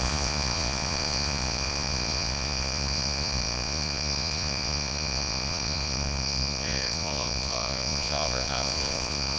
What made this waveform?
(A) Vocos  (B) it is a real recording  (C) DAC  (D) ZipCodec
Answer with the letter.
A